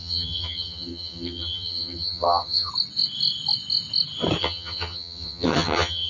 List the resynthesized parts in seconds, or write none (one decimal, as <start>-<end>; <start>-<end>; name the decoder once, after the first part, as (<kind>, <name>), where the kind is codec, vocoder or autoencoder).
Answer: 0.0-2.7 (vocoder, HiFi-GAN); 4.4-6.1